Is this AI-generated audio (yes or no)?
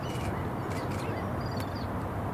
yes